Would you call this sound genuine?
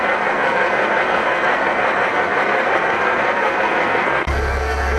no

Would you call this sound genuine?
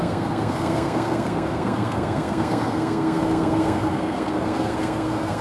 no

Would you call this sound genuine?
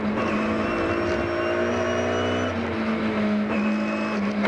yes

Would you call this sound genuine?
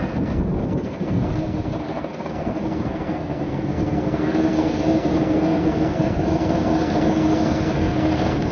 no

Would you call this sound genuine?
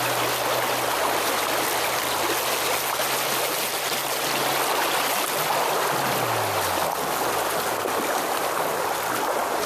yes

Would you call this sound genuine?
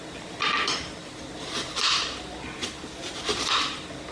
yes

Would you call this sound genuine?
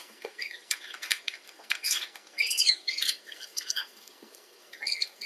no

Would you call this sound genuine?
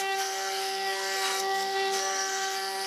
no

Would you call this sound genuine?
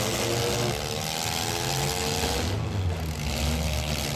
yes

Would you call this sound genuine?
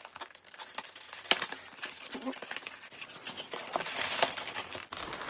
yes